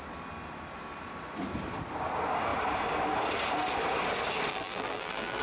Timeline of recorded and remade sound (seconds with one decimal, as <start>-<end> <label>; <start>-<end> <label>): 0.0-4.5 recorded; 4.5-5.4 remade

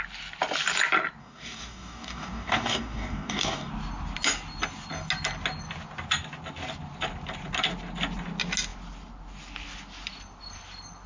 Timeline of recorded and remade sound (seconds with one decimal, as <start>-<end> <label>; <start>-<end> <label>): 0.0-1.2 recorded; 1.2-3.7 remade; 3.7-11.1 recorded

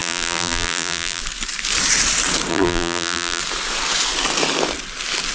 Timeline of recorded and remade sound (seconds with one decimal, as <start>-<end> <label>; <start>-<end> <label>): 0.0-1.2 remade; 1.2-2.5 recorded; 2.5-3.4 remade; 3.4-5.3 recorded